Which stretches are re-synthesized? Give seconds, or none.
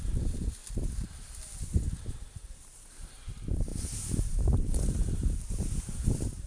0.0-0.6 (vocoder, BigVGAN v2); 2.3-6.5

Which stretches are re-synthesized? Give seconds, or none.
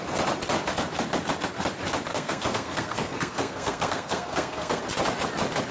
2.1-4.8 (codec, SNAC)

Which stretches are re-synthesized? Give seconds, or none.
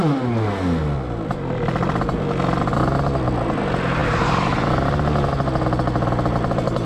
none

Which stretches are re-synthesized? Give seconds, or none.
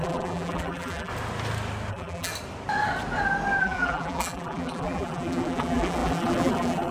0.0-1.1 (vocoder, BigVGAN v2); 1.9-2.3; 3.6-6.9